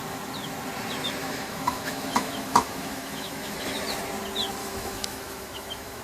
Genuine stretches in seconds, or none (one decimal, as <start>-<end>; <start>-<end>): 0.0-1.2; 3.8-4.6